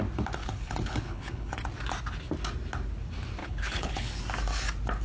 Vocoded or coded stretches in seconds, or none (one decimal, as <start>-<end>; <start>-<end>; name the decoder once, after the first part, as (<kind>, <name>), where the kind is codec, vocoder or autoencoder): 0.4-1.5 (codec, HILCodec); 3.4-4.2